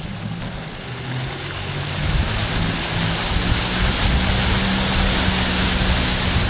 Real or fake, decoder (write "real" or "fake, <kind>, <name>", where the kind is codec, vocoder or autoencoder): real